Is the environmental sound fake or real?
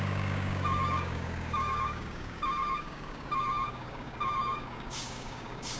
fake